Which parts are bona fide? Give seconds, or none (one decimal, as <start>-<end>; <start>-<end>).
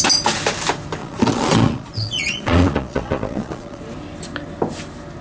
0.0-1.0; 3.8-5.2